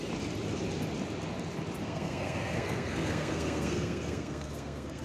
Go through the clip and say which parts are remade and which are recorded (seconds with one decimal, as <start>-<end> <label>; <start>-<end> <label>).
0.0-1.8 recorded; 1.8-5.0 remade